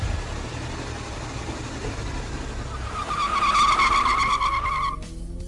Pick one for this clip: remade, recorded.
recorded